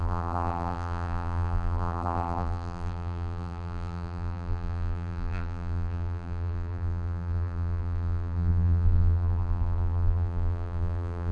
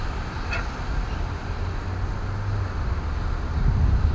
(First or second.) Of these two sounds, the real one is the second